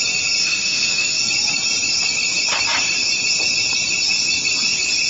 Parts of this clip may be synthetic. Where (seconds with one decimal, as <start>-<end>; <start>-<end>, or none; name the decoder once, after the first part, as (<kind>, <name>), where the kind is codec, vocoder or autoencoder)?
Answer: 0.4-1.2 (autoencoder, DAC-VAE)